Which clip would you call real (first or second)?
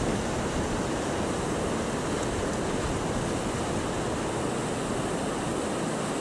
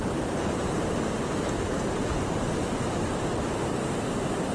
first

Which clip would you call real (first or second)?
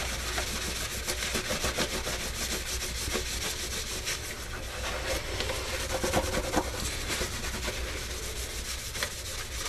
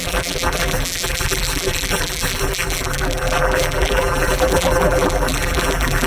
first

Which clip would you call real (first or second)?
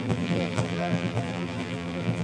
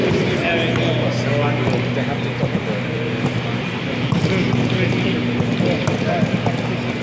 second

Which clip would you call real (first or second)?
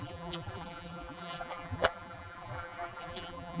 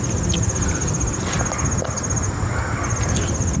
second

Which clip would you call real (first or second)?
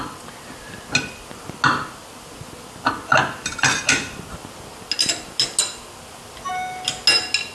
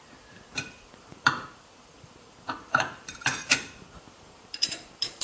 first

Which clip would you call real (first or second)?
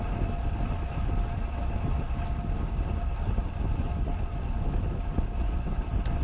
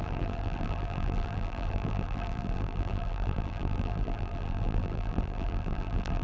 first